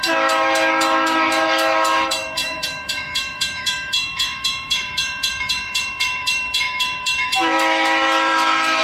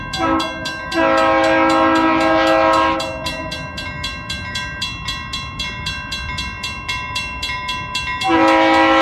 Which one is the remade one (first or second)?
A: first